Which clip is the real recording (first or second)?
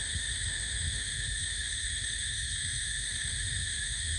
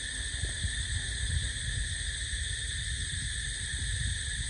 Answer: second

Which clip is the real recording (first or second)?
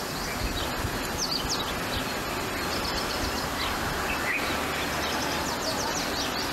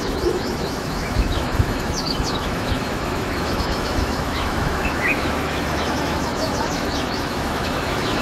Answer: first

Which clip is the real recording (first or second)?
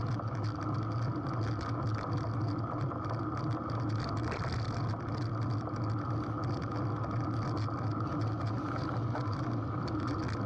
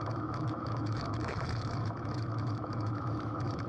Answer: first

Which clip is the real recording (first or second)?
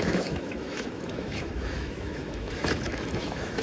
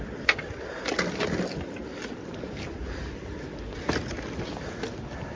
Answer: second